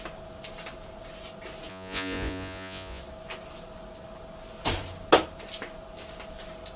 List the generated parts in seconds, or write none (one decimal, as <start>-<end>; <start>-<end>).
1.7-3.0